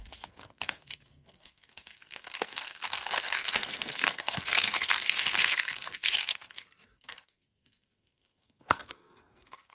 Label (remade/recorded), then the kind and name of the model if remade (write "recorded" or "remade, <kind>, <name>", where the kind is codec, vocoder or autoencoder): remade, codec, SNAC